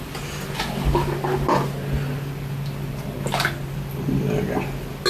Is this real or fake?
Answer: real